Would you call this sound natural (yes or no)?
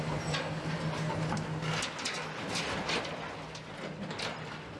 yes